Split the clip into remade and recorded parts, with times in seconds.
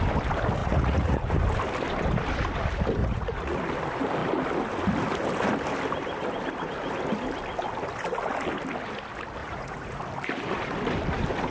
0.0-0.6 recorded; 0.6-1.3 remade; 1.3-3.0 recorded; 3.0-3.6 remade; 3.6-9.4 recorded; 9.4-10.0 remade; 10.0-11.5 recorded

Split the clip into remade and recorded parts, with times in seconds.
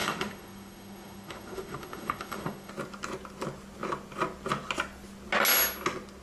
0.0-2.7 remade; 2.7-6.2 recorded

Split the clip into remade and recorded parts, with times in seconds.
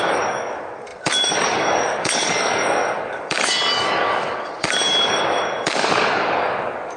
0.0-7.0 remade